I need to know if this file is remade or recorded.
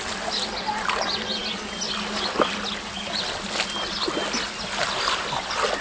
recorded